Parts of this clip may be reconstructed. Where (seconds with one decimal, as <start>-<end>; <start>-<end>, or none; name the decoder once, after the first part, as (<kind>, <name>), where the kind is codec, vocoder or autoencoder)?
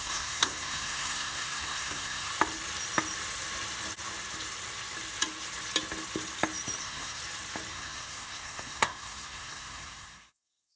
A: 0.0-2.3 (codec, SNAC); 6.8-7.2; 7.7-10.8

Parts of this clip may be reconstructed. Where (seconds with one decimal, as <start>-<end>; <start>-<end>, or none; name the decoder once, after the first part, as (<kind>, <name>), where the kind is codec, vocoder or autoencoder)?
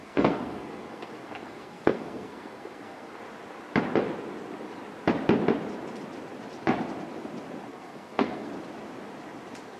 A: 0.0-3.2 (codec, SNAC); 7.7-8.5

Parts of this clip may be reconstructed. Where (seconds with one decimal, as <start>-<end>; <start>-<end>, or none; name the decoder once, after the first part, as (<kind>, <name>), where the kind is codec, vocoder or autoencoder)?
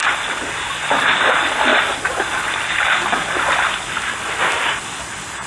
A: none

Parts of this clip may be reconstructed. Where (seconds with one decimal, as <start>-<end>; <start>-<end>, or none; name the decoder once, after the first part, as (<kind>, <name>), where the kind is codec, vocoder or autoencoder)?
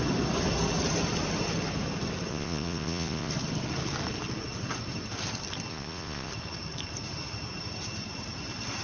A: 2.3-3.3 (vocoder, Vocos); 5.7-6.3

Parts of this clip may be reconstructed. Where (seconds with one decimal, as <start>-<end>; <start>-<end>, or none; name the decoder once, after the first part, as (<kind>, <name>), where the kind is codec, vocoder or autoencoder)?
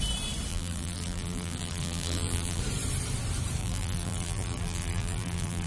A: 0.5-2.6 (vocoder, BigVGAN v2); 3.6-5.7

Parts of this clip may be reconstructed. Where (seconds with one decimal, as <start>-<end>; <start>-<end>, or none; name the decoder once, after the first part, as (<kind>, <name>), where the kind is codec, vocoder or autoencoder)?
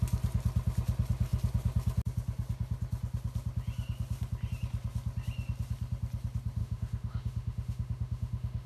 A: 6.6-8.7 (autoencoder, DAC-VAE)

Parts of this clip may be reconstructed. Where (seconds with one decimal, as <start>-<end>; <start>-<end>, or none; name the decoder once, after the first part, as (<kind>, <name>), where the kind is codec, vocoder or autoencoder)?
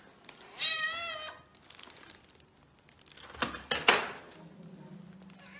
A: none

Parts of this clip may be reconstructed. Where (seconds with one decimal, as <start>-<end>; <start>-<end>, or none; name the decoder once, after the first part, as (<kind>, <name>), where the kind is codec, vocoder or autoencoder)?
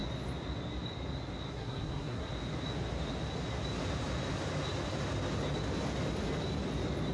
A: 1.5-2.3 (codec, SNAC)